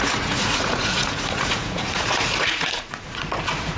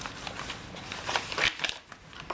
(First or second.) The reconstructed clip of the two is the first